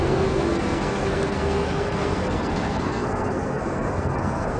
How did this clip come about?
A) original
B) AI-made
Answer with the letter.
B